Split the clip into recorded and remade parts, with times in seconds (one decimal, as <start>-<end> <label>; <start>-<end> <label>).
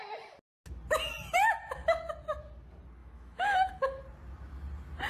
0.0-3.0 recorded; 3.0-3.7 remade; 3.7-5.1 recorded